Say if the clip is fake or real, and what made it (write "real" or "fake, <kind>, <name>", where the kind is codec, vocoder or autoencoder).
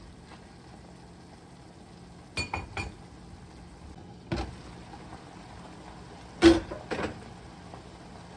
real